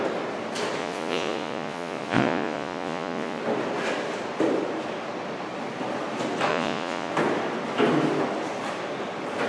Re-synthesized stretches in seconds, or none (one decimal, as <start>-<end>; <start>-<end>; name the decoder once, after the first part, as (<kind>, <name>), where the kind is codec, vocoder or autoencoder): 0.8-3.4 (vocoder, Vocos); 6.5-7.1